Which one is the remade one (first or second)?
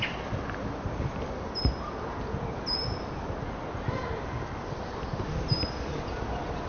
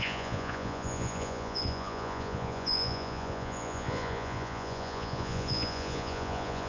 second